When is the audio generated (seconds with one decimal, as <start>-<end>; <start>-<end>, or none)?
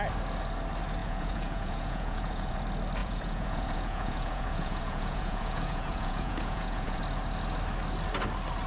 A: 1.0-2.6; 3.0-7.0